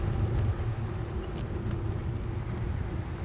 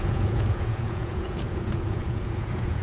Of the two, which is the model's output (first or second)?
second